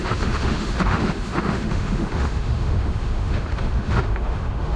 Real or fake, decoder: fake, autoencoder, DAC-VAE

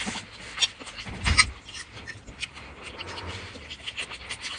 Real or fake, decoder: real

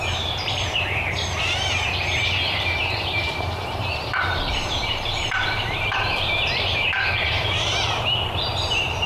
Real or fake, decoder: fake, vocoder, BigVGAN v2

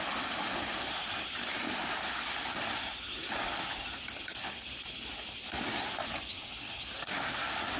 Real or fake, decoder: real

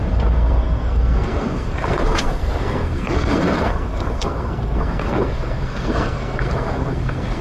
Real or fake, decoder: fake, codec, SNAC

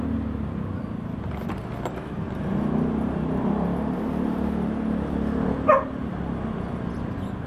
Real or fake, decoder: real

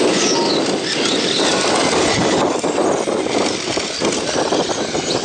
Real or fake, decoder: real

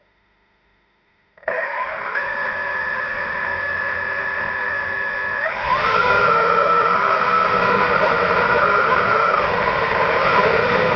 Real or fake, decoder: fake, autoencoder, DAC-VAE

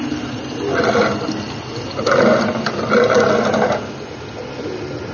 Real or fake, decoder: real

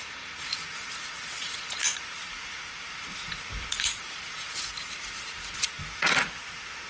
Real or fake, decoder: fake, vocoder, Vocos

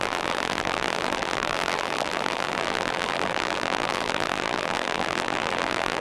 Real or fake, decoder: fake, vocoder, BigVGAN v2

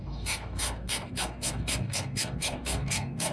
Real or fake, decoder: fake, codec, DAC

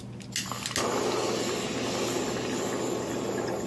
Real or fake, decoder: real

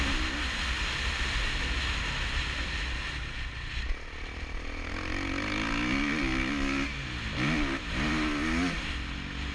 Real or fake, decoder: real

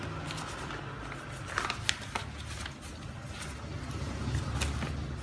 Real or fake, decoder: real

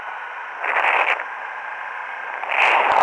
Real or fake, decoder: real